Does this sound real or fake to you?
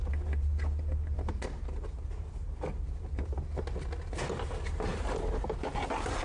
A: real